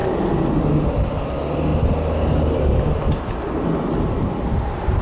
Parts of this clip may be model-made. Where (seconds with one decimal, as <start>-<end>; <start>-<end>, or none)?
none

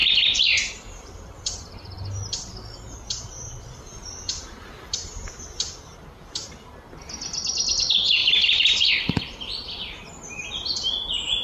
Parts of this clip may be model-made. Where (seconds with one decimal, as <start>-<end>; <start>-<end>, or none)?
8.2-8.9

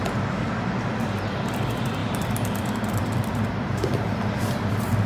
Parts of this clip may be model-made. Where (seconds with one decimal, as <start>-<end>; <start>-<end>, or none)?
2.0-5.1

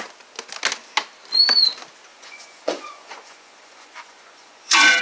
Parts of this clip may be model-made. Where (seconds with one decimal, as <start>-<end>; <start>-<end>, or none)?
2.1-5.0

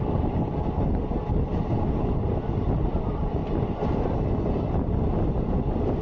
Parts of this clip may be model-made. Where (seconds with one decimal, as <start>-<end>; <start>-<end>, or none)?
none

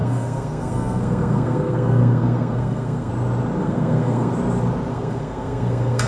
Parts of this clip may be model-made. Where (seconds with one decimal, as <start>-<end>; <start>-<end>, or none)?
0.0-3.1; 3.6-4.3; 4.9-6.1

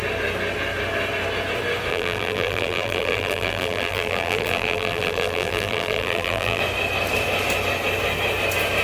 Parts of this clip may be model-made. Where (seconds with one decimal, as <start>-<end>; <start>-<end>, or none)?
1.9-6.6

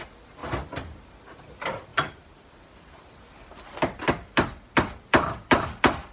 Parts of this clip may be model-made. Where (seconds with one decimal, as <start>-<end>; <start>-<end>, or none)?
0.4-1.1; 1.9-5.6